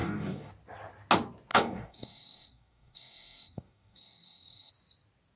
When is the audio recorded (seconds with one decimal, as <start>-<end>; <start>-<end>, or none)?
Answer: 0.5-1.5; 4.7-5.4